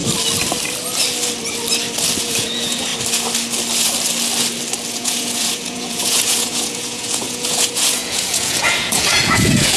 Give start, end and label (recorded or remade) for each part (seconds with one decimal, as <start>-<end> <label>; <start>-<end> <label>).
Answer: 0.0-2.2 recorded; 2.2-2.9 remade; 2.9-4.9 recorded; 4.9-9.8 remade